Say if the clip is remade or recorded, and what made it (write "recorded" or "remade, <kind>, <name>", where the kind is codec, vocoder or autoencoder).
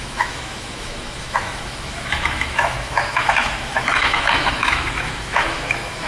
remade, autoencoder, DAC-VAE